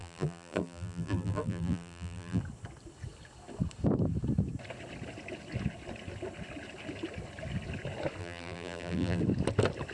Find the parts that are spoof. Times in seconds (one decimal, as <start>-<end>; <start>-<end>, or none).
0.0-2.4; 8.2-9.2